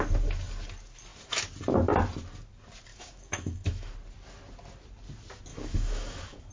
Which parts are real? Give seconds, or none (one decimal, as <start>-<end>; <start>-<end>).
0.0-2.9; 3.9-5.5